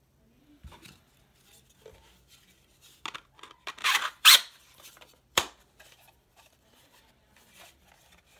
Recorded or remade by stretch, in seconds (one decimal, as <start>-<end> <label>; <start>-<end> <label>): 0.0-3.8 recorded; 3.8-7.1 remade; 7.1-8.4 recorded